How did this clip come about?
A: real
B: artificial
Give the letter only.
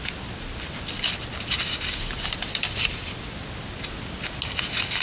A